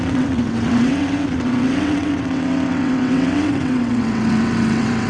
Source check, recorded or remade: remade